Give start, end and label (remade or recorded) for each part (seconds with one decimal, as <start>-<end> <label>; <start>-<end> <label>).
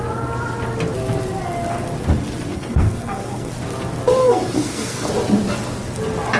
0.0-2.5 recorded; 2.5-3.5 remade; 3.5-4.2 recorded; 4.2-5.1 remade; 5.1-6.4 recorded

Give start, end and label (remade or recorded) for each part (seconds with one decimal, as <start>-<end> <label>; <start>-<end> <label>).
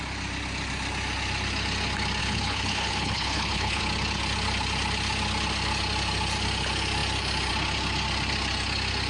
0.0-2.2 recorded; 2.2-3.8 remade; 3.8-9.1 recorded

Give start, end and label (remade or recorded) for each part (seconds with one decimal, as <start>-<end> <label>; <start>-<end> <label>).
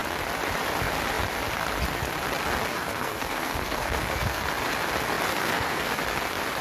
0.0-2.7 recorded; 2.7-4.4 remade; 4.4-5.3 recorded; 5.3-5.9 remade; 5.9-6.6 recorded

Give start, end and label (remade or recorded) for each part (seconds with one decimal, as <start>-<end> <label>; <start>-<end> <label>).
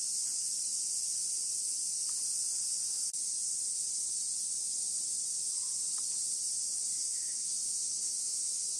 0.0-7.0 recorded; 7.0-8.8 remade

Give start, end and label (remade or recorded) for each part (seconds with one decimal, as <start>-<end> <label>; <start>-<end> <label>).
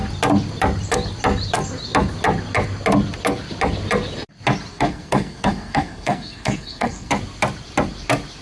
0.0-4.7 recorded; 4.7-7.1 remade; 7.1-8.4 recorded